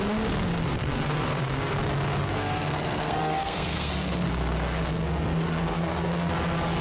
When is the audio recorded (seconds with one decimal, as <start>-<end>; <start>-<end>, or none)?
0.0-0.5; 1.7-2.2; 6.3-6.8